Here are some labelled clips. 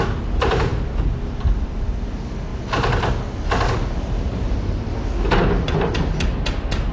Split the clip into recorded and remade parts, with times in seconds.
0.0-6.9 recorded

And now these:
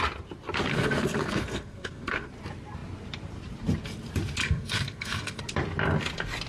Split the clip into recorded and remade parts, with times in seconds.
0.0-0.7 recorded; 0.7-2.3 remade; 2.3-4.4 recorded; 4.4-5.4 remade; 5.4-6.5 recorded

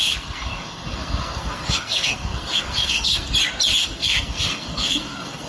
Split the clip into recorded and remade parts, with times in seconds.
0.0-3.3 remade; 3.3-3.8 recorded; 3.8-5.5 remade

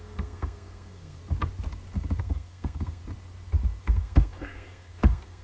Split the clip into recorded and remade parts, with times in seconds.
0.0-1.2 remade; 1.2-2.2 recorded; 2.2-3.0 remade; 3.0-3.8 recorded; 3.8-5.4 remade

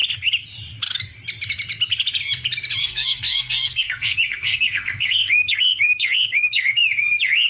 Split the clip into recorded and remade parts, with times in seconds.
0.0-2.8 recorded; 2.8-6.8 remade; 6.8-7.5 recorded